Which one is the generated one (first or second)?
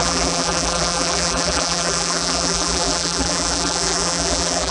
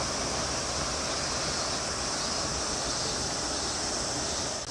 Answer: first